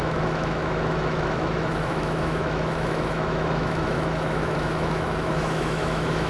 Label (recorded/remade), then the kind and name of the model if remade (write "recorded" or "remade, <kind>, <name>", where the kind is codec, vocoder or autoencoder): remade, autoencoder, DAC-VAE